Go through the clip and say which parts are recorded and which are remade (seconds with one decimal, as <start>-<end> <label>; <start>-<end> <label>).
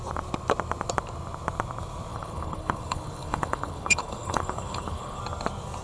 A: 0.0-2.1 recorded; 2.1-5.2 remade; 5.2-5.8 recorded